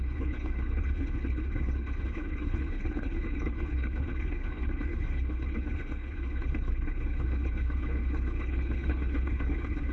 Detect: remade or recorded remade